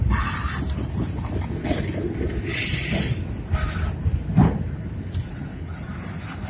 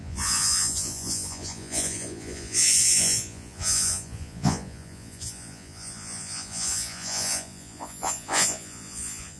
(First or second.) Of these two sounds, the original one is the first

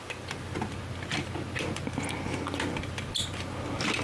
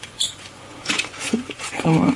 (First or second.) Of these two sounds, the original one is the first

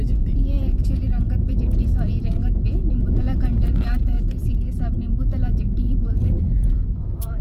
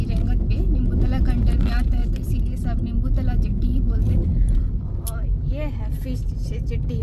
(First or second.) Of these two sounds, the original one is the second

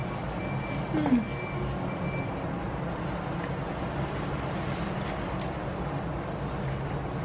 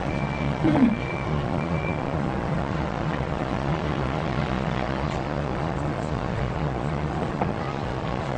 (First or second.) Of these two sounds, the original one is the first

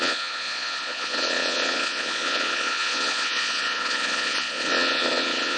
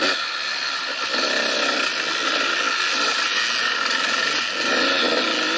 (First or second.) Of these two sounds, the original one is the second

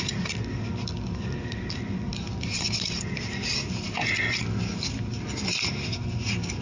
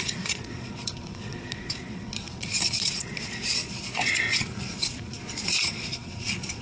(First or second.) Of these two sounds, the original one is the first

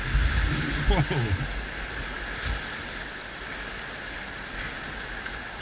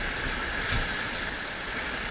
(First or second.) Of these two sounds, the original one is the first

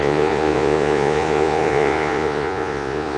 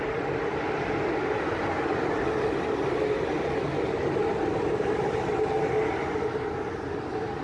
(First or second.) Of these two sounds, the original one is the second